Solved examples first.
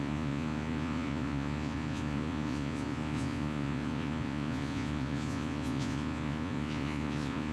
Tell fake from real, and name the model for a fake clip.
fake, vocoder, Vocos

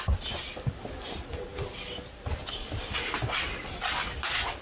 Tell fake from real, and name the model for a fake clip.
real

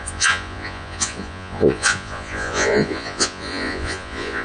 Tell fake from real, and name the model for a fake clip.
fake, vocoder, Vocos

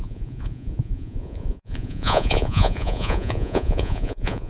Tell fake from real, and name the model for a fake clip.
fake, vocoder, Vocos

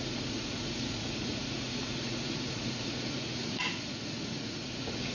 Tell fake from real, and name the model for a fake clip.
fake, vocoder, Vocos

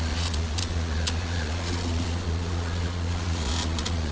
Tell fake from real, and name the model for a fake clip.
fake, vocoder, Vocos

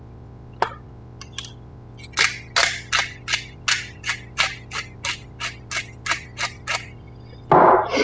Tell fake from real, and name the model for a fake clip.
real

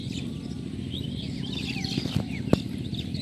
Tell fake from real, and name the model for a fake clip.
real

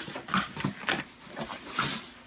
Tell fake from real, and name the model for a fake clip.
real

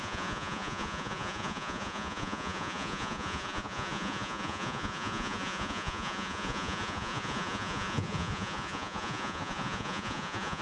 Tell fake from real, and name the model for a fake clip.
fake, vocoder, Vocos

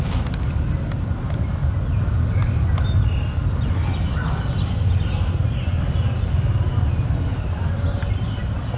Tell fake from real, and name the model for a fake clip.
real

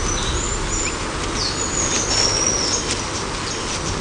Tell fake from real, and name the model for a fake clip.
real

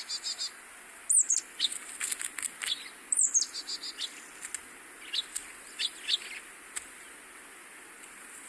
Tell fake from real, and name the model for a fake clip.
real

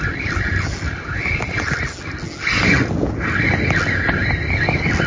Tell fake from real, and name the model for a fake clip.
real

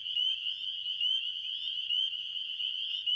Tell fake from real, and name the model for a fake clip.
fake, vocoder, Vocos